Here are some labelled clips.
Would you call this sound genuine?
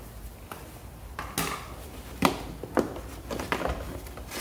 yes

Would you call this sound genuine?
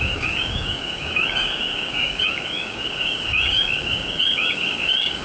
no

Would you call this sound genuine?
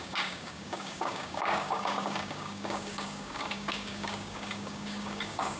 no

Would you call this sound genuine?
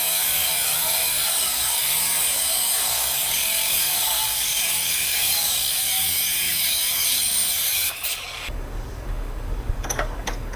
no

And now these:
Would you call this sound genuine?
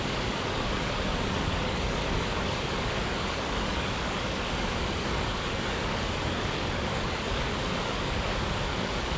no